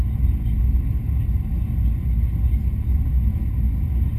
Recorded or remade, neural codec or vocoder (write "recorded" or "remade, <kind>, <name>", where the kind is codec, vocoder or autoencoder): recorded